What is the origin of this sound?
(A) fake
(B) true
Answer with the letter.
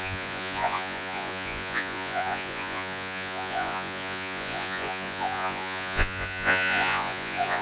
A